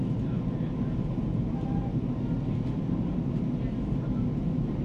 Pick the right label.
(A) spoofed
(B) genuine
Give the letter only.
B